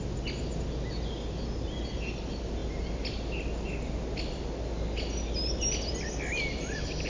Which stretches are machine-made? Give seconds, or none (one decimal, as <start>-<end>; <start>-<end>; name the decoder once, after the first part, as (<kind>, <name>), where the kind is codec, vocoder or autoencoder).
none